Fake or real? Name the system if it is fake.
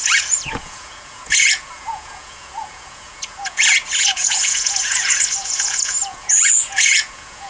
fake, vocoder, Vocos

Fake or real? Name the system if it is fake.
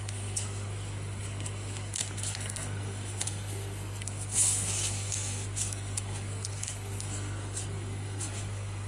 fake, codec, SNAC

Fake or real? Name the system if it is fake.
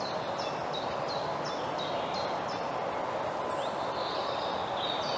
real